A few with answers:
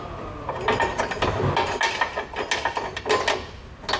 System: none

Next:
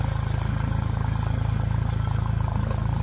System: none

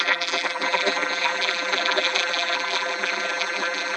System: vocoder, BigVGAN v2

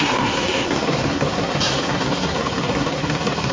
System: codec, SNAC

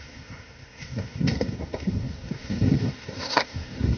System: codec, SNAC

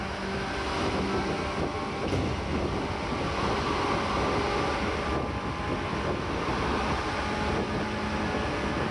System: none